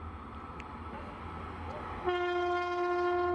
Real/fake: real